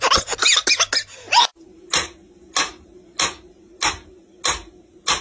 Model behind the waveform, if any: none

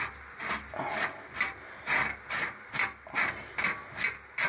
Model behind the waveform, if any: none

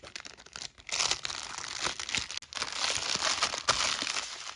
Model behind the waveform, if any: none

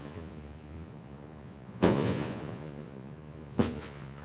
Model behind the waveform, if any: vocoder, Vocos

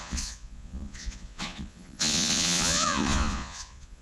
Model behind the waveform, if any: vocoder, Vocos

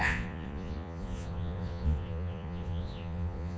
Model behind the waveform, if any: vocoder, Vocos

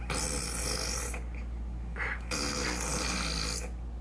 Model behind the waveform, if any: none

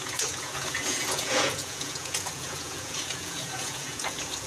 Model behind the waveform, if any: vocoder, Vocos